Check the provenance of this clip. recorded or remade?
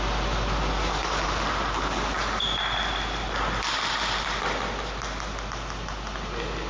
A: recorded